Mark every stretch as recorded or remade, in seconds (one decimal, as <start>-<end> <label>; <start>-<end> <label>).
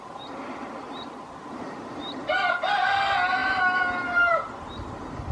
0.0-5.3 recorded